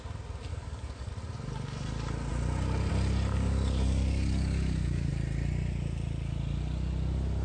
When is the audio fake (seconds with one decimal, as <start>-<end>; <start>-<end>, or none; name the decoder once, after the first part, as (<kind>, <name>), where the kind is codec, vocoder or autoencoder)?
0.5-1.1 (codec, DAC); 3.3-5.1